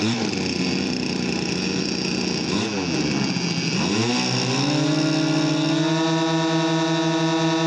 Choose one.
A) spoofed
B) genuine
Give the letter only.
B